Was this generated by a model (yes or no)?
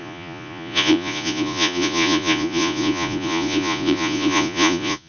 yes